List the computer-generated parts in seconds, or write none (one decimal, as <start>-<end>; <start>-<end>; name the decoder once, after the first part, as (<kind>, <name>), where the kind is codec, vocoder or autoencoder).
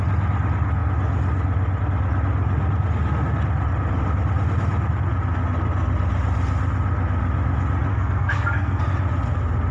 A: 7.9-8.8 (codec, SNAC)